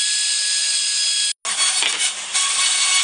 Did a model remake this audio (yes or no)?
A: no